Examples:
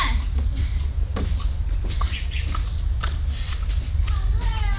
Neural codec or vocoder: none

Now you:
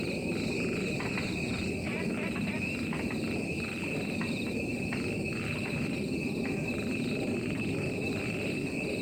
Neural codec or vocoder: none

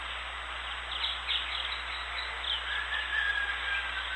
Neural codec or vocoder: none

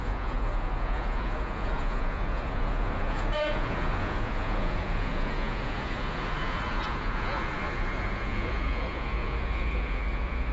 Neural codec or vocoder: vocoder, Vocos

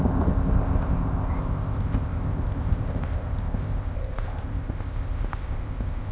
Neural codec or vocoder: codec, ZipCodec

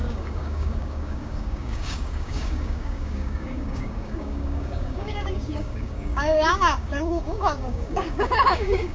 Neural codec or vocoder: codec, DAC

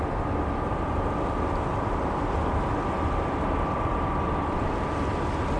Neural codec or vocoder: none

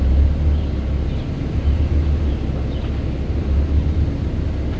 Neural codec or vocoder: none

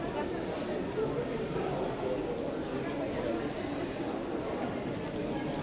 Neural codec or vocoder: none